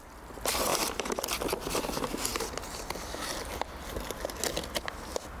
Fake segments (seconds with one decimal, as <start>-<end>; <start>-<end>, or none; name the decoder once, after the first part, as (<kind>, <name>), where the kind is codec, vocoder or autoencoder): 0.7-1.4 (vocoder, BigVGAN v2)